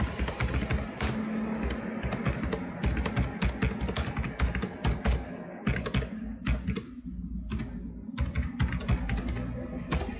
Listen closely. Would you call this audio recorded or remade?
recorded